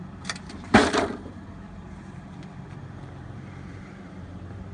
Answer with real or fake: fake